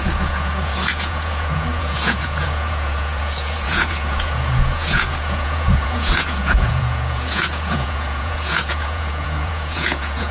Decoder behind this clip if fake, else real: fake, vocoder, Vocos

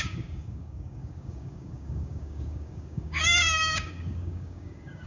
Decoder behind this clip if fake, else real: fake, codec, DAC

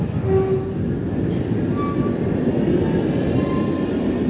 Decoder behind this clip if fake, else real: real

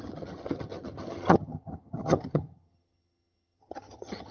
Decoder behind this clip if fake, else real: fake, vocoder, HiFi-GAN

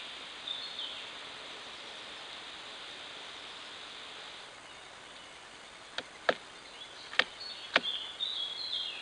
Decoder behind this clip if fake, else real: real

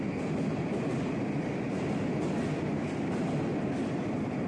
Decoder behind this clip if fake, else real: fake, vocoder, BigVGAN v2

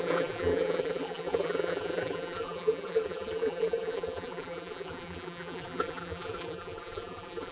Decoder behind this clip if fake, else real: fake, vocoder, BigVGAN v2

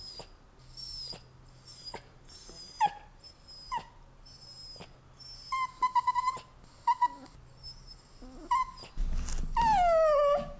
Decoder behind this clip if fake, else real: real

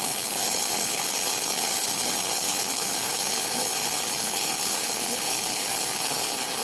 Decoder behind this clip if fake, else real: fake, codec, HILCodec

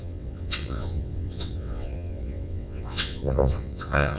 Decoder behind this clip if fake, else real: fake, vocoder, WaveNeXt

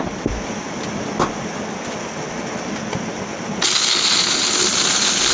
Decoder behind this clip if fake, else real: real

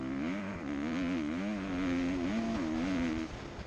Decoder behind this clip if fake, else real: real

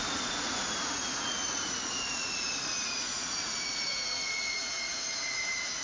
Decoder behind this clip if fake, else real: fake, vocoder, Vocos